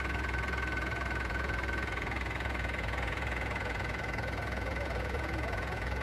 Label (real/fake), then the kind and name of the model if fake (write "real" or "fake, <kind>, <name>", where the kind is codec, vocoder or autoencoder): fake, vocoder, Vocos